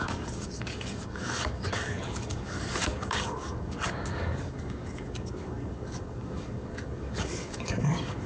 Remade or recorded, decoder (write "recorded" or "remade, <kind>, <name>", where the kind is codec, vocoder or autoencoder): remade, codec, DAC